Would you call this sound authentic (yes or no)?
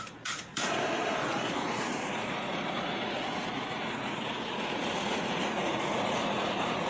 no